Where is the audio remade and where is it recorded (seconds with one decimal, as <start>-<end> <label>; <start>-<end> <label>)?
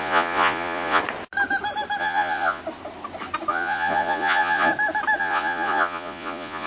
0.0-1.0 remade; 1.0-2.0 recorded; 2.0-2.6 remade; 2.6-3.5 recorded; 3.5-4.7 remade; 4.7-5.2 recorded; 5.2-6.7 remade